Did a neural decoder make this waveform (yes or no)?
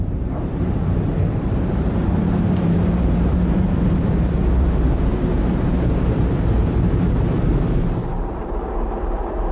yes